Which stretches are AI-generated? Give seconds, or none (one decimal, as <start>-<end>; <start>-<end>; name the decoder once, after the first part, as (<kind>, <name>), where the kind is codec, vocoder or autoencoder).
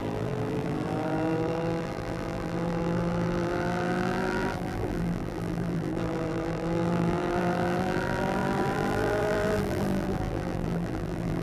0.0-11.4 (vocoder, BigVGAN v2)